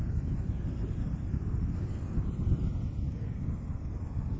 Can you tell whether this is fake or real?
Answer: real